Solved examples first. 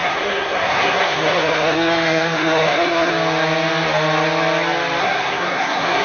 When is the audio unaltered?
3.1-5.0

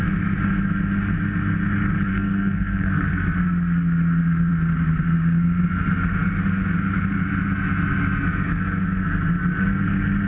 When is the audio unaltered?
0.0-2.1; 3.0-10.3

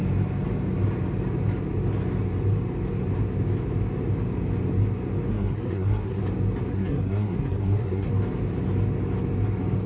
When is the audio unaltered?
0.0-5.3; 6.2-6.7; 8.1-9.9

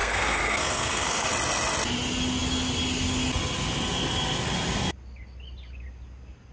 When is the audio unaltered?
1.3-6.5